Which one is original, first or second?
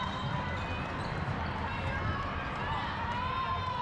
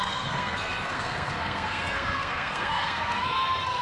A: first